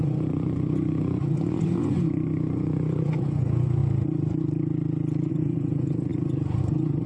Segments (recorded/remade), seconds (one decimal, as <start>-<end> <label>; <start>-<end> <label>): 0.0-3.8 remade; 3.8-5.3 recorded; 5.3-7.1 remade